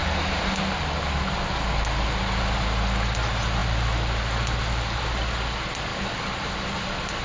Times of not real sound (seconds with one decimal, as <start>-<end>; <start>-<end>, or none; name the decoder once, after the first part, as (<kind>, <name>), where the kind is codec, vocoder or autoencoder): none